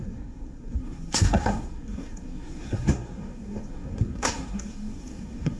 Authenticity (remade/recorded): remade